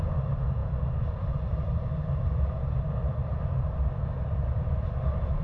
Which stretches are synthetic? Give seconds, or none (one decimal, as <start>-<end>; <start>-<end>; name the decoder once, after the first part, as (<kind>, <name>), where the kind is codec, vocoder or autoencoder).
0.0-5.4 (vocoder, BigVGAN v2)